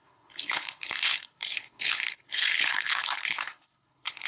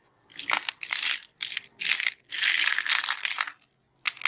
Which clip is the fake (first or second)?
first